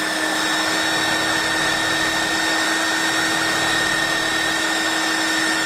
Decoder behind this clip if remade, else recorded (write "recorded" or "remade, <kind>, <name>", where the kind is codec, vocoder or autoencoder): recorded